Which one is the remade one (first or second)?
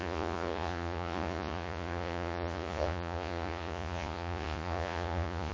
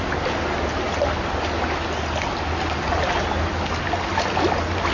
first